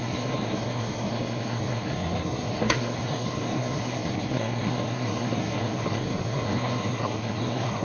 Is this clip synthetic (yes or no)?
yes